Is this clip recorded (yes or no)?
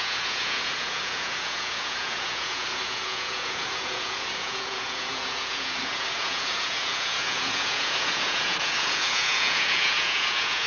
no